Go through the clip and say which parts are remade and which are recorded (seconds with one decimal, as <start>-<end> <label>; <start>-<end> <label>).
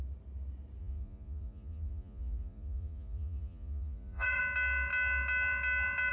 0.0-0.8 recorded; 0.8-4.4 remade; 4.4-6.1 recorded